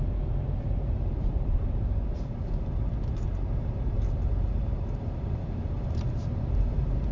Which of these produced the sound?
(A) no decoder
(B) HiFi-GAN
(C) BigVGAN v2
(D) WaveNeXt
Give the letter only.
C